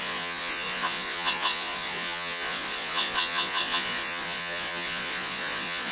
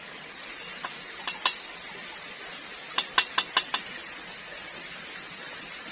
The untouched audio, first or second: second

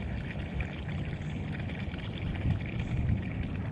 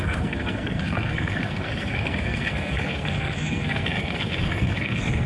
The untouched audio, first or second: first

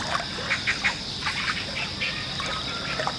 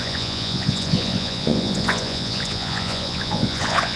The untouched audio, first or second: first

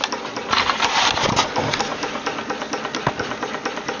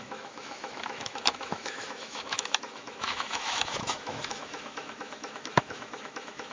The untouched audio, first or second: first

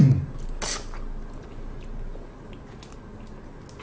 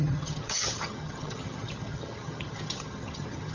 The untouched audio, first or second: first